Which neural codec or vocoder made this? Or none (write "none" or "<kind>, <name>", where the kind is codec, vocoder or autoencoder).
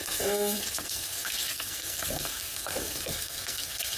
codec, SNAC